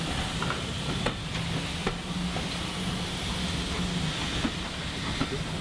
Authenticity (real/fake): real